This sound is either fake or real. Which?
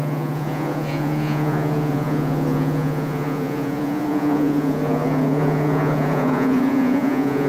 fake